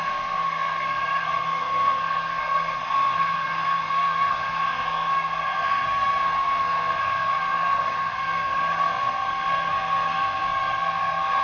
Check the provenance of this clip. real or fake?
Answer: fake